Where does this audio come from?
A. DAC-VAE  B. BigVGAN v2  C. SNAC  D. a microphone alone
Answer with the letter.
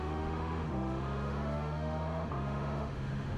A